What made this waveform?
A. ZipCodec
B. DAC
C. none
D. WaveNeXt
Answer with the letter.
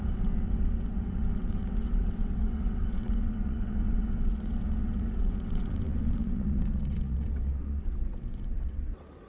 D